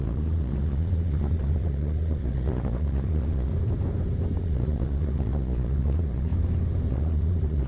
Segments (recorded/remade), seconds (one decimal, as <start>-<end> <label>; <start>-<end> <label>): 0.0-3.5 remade; 3.5-4.4 recorded; 4.4-6.3 remade; 6.3-6.9 recorded; 6.9-7.7 remade